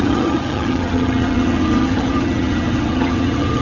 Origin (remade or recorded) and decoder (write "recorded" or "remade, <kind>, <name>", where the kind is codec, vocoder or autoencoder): remade, vocoder, HiFi-GAN